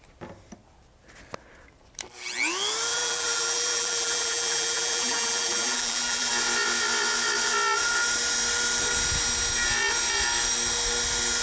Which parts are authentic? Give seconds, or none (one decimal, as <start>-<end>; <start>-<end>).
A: 0.0-2.9; 6.3-11.4